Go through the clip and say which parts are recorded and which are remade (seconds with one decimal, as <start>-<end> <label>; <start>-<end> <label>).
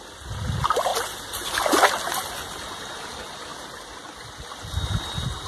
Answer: 0.0-5.5 recorded